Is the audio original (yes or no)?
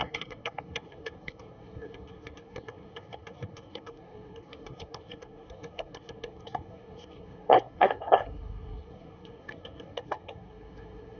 no